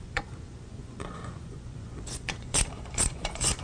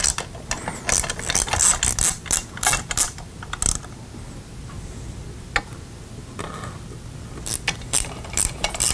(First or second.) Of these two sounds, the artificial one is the first